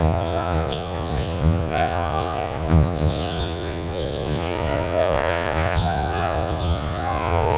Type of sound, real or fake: fake